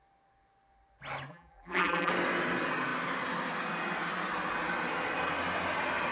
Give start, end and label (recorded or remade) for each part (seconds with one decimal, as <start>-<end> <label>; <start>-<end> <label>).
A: 0.0-1.3 recorded; 1.3-2.1 remade; 2.1-6.1 recorded

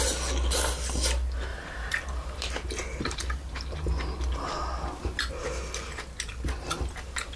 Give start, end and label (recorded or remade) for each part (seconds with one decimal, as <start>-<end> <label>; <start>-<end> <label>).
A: 0.0-1.5 recorded; 1.5-2.5 remade; 2.5-7.4 recorded

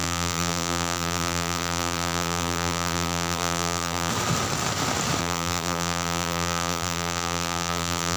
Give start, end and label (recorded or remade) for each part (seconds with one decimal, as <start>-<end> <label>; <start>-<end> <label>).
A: 0.0-4.1 remade; 4.1-5.2 recorded; 5.2-8.2 remade